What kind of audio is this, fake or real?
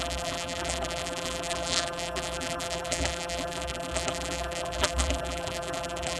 fake